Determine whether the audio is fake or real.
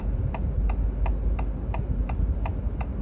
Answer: real